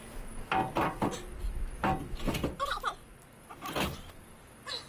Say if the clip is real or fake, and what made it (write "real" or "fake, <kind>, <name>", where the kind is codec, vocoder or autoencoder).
real